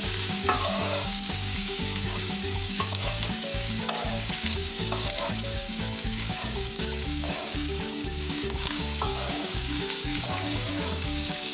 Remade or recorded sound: remade